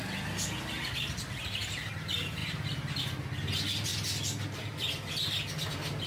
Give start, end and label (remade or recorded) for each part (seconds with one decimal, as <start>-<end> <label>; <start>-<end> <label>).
0.0-1.4 recorded; 1.4-1.9 remade; 1.9-2.4 recorded; 2.4-3.0 remade; 3.0-6.1 recorded